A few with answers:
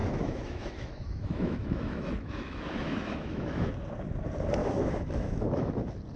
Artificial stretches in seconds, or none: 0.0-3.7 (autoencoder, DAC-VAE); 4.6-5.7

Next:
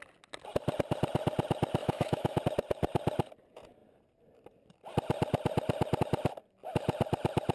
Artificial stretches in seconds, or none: 1.8-2.4 (autoencoder, DAC-VAE)